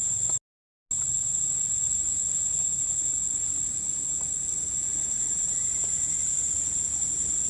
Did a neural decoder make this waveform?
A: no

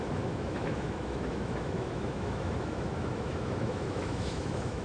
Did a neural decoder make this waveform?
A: yes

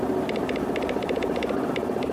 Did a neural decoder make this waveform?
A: no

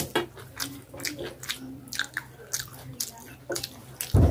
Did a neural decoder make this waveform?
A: no